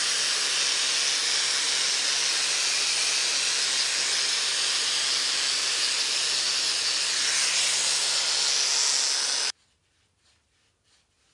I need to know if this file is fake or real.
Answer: real